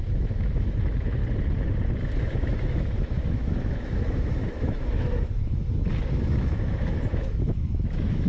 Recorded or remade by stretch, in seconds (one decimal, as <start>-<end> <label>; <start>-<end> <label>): 0.0-1.2 remade; 1.2-2.2 recorded; 2.2-5.5 remade; 5.5-6.1 recorded; 6.1-8.3 remade